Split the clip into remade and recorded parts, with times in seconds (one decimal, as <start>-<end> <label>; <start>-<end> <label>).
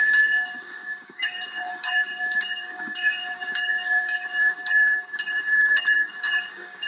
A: 0.0-4.6 remade; 4.6-6.1 recorded; 6.1-6.9 remade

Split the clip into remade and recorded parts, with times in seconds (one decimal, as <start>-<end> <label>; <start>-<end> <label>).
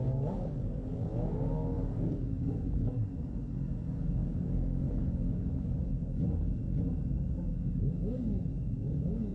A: 0.0-6.6 remade; 6.6-7.1 recorded; 7.1-9.3 remade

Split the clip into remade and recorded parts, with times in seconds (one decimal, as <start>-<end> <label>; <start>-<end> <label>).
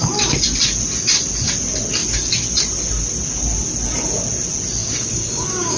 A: 0.0-4.8 recorded; 4.8-5.8 remade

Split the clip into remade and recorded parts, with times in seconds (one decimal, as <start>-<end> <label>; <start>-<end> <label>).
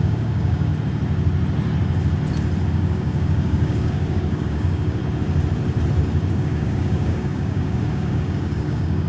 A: 0.0-0.7 remade; 0.7-2.7 recorded; 2.7-5.0 remade; 5.0-6.3 recorded; 6.3-9.1 remade